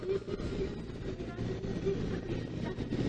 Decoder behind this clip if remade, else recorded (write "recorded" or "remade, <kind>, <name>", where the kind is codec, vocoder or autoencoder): recorded